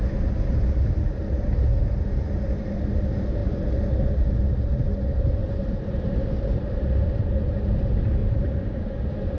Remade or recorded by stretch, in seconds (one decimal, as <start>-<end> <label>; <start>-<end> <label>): 0.0-5.4 recorded; 5.4-7.5 remade; 7.5-8.2 recorded; 8.2-9.4 remade